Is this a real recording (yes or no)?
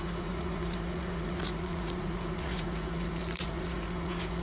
no